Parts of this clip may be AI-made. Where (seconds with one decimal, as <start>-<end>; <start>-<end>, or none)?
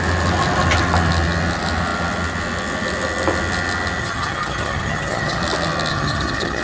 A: 4.0-5.4; 5.9-6.6